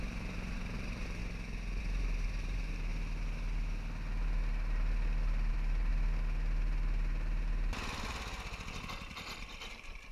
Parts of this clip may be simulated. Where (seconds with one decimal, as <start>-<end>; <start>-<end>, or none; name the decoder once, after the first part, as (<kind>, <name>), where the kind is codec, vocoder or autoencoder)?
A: 0.0-1.2 (vocoder, BigVGAN v2); 1.8-2.9; 5.5-5.9; 9.7-10.1